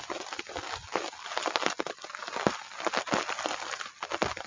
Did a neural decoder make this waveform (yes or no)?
no